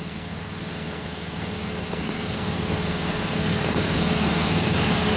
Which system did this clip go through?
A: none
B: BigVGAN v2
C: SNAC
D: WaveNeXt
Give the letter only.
C